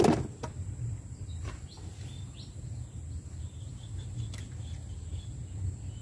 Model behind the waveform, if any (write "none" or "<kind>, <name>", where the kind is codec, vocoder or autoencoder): none